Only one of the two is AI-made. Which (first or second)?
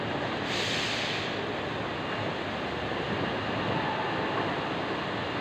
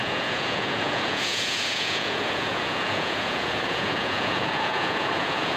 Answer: second